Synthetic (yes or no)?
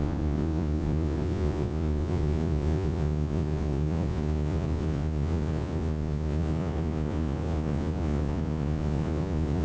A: yes